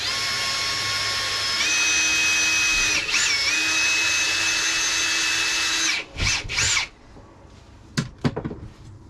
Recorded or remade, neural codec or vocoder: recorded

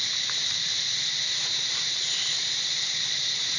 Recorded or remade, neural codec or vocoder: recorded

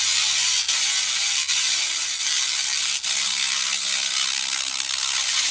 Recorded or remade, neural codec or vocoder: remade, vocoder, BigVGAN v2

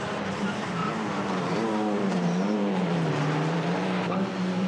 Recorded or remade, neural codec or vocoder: remade, vocoder, BigVGAN v2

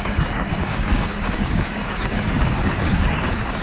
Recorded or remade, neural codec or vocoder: remade, codec, DAC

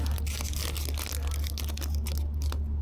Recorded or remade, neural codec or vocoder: recorded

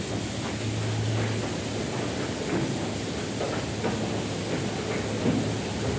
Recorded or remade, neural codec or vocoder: recorded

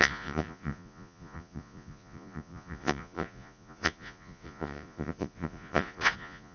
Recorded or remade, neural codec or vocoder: remade, vocoder, Vocos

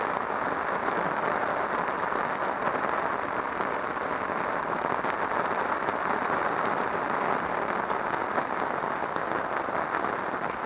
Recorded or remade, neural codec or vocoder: recorded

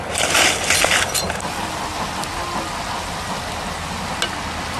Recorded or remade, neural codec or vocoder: recorded